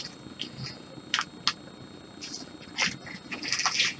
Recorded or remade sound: recorded